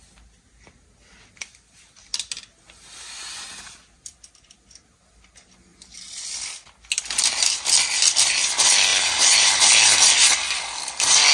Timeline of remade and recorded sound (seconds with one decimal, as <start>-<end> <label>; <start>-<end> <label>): 0.0-8.9 recorded; 8.9-9.5 remade; 9.5-11.3 recorded